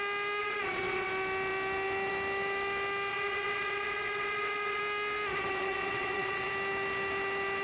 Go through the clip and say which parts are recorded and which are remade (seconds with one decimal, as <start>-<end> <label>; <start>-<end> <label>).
0.0-0.4 recorded; 0.4-1.1 remade; 1.1-3.1 recorded; 3.1-4.8 remade; 4.8-5.3 recorded; 5.3-6.5 remade; 6.5-7.6 recorded